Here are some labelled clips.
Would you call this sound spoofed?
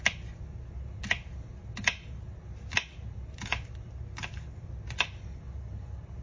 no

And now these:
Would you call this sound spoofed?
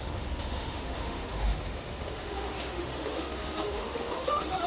yes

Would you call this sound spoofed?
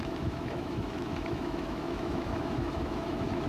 yes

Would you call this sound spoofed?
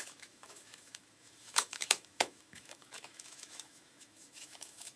yes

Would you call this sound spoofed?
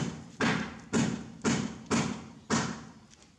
no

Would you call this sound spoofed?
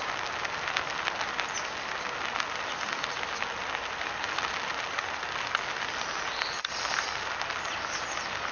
no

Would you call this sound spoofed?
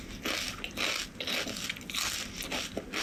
no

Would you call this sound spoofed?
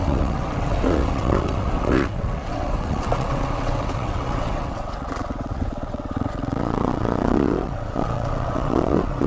yes